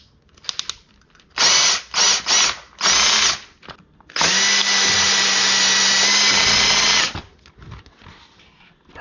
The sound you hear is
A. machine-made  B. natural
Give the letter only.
B